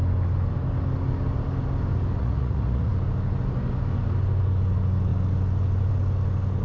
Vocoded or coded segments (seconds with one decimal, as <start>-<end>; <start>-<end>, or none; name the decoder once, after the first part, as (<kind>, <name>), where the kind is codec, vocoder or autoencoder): 2.2-2.9 (vocoder, Vocos)